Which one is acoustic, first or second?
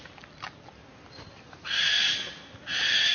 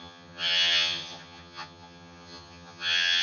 first